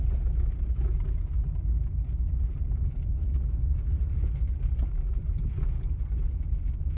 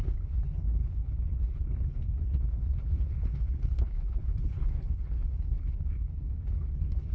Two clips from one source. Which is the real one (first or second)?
first